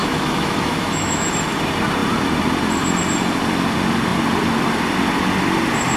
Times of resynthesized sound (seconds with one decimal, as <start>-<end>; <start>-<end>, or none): 0.0-1.3